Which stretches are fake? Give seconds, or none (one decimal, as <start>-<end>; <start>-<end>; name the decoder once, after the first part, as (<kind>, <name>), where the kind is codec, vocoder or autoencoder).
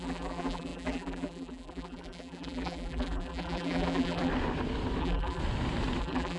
0.0-4.3 (vocoder, BigVGAN v2); 5.0-5.4; 6.0-6.4